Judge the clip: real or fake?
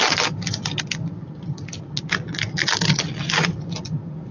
real